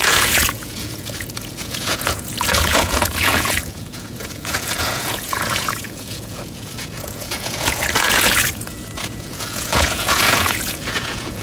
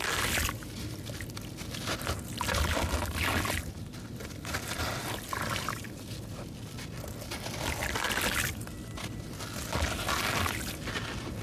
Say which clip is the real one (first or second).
second